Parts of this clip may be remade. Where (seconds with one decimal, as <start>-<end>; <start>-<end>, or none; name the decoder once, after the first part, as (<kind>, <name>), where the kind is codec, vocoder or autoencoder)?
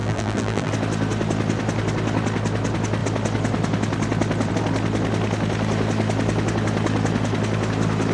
0.0-0.7 (vocoder, BigVGAN v2)